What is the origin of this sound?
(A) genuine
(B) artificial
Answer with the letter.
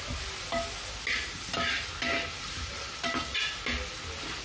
A